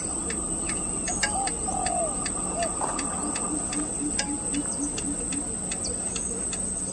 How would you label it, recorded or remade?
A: recorded